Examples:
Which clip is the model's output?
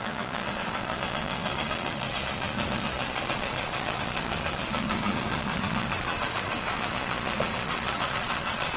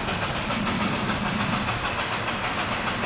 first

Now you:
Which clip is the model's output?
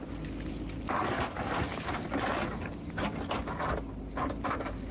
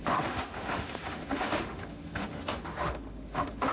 second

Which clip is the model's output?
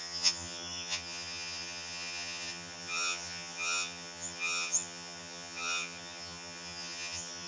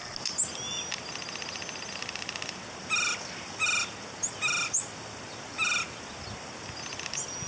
first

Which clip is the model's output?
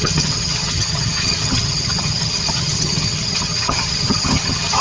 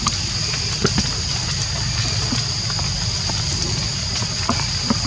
first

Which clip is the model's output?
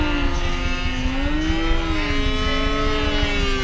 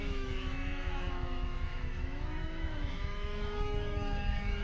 second